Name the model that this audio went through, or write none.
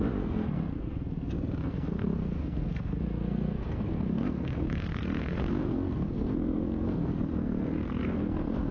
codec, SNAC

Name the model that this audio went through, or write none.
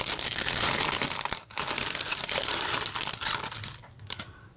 none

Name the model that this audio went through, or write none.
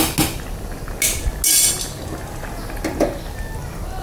none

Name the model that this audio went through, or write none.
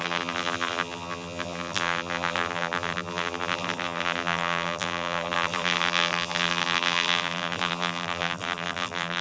vocoder, BigVGAN v2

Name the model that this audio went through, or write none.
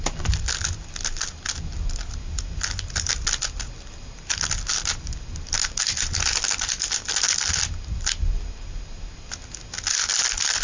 none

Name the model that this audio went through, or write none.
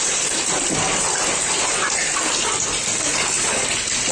none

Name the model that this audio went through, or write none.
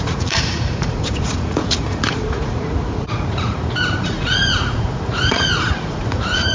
vocoder, Vocos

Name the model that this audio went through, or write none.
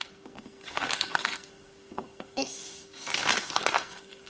codec, SNAC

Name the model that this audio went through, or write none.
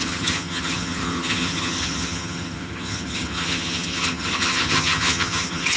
vocoder, HiFi-GAN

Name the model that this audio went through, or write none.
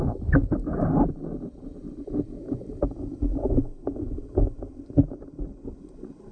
none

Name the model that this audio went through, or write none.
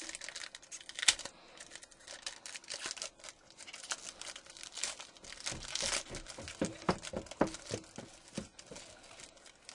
none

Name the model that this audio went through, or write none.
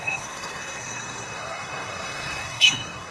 codec, SNAC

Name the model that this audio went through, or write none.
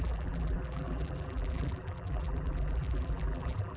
vocoder, BigVGAN v2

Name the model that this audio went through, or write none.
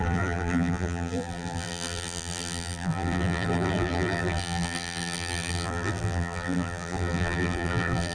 vocoder, BigVGAN v2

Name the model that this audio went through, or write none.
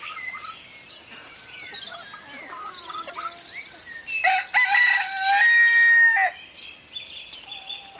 none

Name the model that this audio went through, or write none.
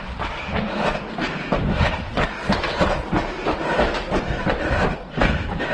none